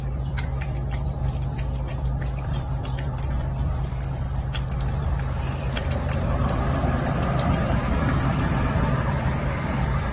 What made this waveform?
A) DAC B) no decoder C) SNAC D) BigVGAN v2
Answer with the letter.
D